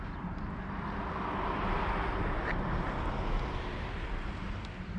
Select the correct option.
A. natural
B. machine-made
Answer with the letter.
A